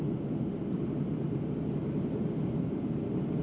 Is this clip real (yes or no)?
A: yes